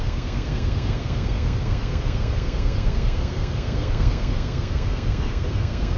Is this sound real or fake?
fake